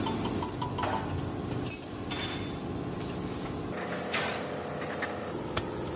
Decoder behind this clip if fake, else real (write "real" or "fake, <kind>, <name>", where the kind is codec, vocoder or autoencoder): real